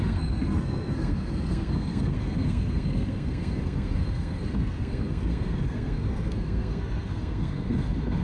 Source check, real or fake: fake